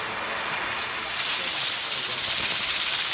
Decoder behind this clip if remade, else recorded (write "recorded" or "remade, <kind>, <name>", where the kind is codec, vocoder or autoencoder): recorded